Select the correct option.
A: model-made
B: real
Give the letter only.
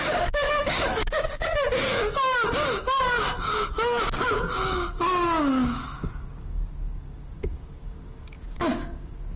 A